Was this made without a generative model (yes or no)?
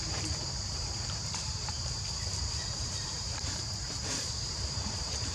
no